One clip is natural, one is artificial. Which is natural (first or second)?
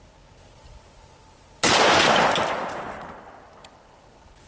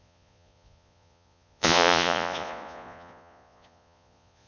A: first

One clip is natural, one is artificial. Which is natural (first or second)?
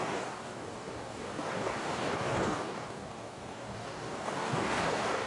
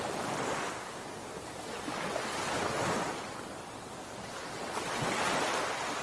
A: second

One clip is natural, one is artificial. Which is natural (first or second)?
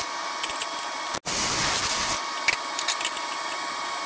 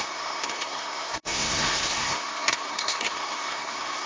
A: first